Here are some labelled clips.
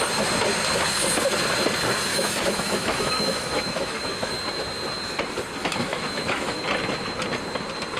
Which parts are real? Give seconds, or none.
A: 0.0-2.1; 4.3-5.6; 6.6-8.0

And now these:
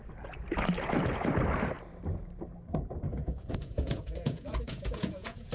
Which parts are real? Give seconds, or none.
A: 0.0-3.1

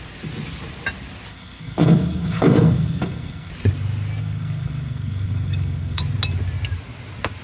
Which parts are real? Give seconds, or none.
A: 0.0-1.3; 3.5-4.2; 6.0-7.4

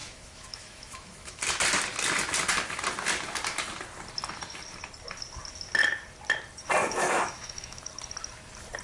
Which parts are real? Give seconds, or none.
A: 1.4-6.8; 7.9-8.8

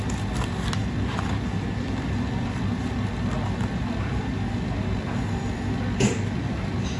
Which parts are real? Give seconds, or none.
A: 0.0-7.0